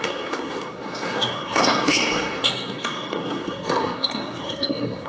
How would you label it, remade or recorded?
remade